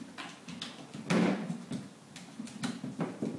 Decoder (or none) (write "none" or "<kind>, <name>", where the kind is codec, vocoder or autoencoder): none